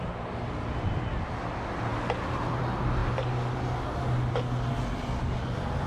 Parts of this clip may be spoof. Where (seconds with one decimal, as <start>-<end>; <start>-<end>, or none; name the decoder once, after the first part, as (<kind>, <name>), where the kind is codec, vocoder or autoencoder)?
none